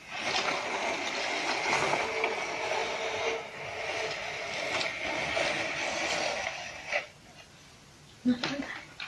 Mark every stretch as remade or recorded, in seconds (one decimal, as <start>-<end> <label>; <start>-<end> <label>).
0.0-9.1 recorded